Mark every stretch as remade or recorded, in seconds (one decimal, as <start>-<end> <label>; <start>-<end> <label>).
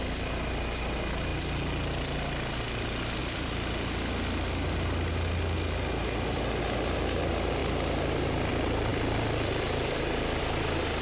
0.0-3.2 recorded; 3.2-5.1 remade; 5.1-8.9 recorded; 8.9-10.4 remade; 10.4-11.0 recorded